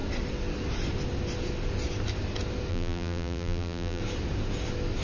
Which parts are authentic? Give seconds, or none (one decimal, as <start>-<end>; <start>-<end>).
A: 0.0-2.7; 4.0-5.0